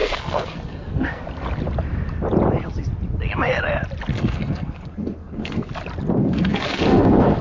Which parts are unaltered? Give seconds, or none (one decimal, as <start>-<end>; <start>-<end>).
1.2-4.1; 5.7-6.2